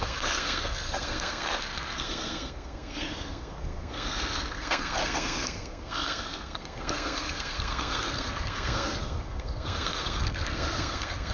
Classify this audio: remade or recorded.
remade